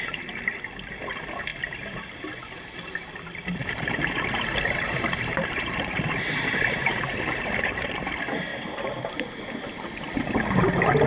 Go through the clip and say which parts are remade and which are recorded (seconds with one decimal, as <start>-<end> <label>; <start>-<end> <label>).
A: 0.0-3.6 recorded; 3.6-7.9 remade; 7.9-11.1 recorded